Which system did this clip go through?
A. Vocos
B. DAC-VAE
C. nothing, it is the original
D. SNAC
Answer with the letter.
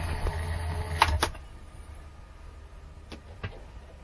C